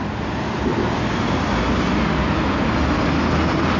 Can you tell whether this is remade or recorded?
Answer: recorded